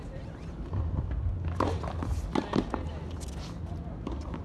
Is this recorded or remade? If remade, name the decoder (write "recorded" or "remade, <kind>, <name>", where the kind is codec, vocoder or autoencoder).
recorded